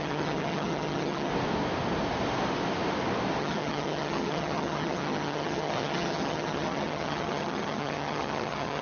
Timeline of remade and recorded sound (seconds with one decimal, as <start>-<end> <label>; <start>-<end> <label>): 0.0-1.3 remade; 1.3-3.4 recorded; 3.4-8.8 remade